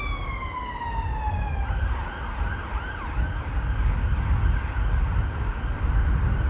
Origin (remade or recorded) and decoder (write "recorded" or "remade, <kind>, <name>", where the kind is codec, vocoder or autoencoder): recorded